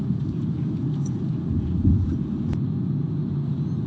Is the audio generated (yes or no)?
yes